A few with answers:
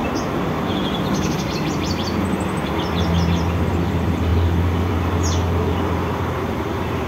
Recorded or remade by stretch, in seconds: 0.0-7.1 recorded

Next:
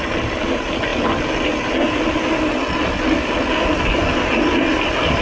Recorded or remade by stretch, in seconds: 0.0-5.2 recorded

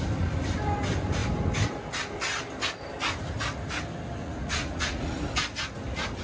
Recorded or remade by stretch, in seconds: 0.0-4.2 recorded; 4.2-5.2 remade; 5.2-6.2 recorded

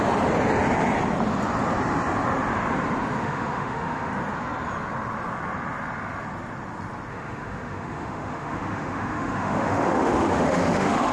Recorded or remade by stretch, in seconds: 0.0-3.2 recorded; 3.2-4.1 remade; 4.1-7.1 recorded; 7.1-11.1 remade

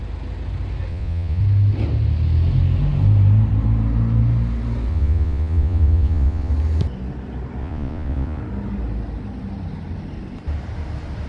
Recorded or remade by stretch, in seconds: 0.0-0.9 recorded; 0.9-1.4 remade; 1.4-4.9 recorded; 4.9-6.5 remade; 6.5-7.6 recorded; 7.6-8.4 remade; 8.4-11.3 recorded

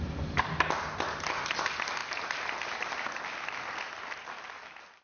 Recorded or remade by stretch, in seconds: 0.0-5.0 recorded

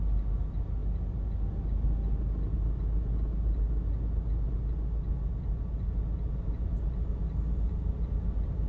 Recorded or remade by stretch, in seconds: 0.0-8.7 recorded